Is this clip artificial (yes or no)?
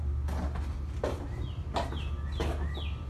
no